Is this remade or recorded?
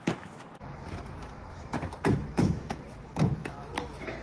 remade